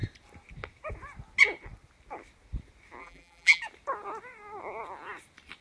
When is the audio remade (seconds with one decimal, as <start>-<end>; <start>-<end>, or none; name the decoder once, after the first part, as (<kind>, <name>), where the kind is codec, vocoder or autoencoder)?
3.0-3.6 (vocoder, BigVGAN v2)